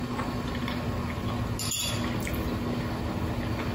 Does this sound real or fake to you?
real